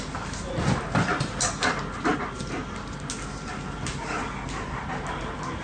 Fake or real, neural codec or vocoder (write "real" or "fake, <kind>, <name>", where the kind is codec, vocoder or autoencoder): real